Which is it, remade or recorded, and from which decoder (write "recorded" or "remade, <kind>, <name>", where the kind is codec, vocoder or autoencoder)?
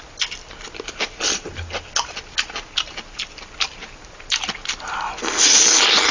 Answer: recorded